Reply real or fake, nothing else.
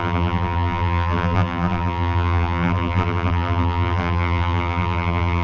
fake